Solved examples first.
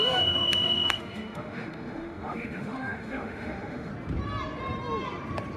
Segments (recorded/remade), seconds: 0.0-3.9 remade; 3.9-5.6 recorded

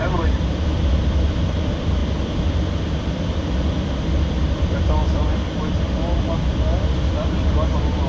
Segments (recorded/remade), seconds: 0.0-8.1 recorded

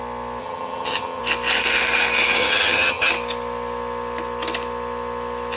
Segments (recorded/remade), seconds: 0.0-0.4 recorded; 0.4-1.2 remade; 1.2-2.4 recorded; 2.4-3.1 remade; 3.1-5.6 recorded

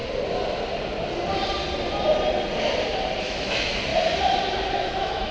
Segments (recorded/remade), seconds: 0.0-3.2 recorded; 3.2-3.9 remade; 3.9-4.7 recorded; 4.7-5.3 remade

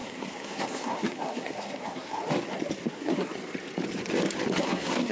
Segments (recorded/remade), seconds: 0.0-2.2 remade; 2.2-2.9 recorded; 2.9-3.3 remade; 3.3-4.6 recorded; 4.6-5.1 remade

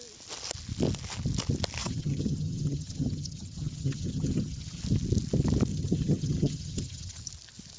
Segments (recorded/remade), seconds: 0.0-1.8 recorded; 1.8-4.8 remade; 4.8-5.7 recorded; 5.7-7.2 remade; 7.2-7.8 recorded